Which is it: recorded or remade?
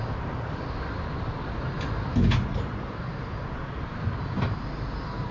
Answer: recorded